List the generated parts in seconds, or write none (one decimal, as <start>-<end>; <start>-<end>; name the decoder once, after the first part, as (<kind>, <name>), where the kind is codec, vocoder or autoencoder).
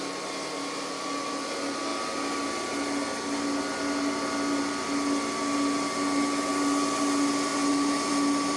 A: none